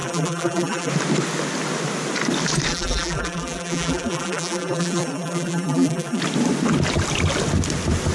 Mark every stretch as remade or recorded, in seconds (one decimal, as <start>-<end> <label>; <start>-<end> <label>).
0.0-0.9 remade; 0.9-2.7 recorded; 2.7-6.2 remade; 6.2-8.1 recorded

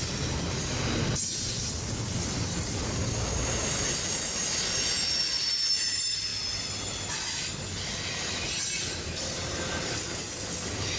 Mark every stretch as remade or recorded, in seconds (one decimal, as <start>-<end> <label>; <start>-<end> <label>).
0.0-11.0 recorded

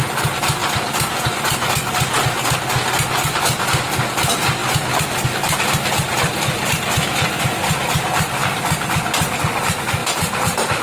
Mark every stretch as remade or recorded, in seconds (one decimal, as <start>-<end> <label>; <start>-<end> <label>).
0.0-10.0 recorded; 10.0-10.8 remade

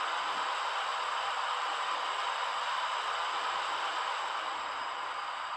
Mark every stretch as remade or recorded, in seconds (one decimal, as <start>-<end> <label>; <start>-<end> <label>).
0.0-0.9 recorded; 0.9-1.4 remade; 1.4-5.6 recorded

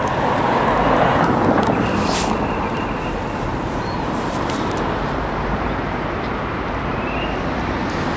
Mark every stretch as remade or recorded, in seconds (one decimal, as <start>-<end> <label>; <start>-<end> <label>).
0.0-3.5 recorded; 3.5-7.6 remade; 7.6-8.2 recorded

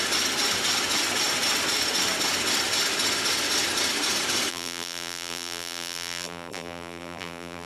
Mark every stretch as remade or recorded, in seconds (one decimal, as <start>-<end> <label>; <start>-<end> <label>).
0.0-4.5 recorded; 4.5-7.7 remade